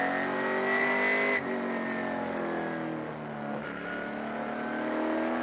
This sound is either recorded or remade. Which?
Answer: recorded